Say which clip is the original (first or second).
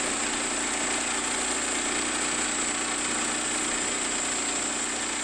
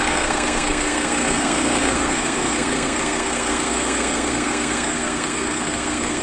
first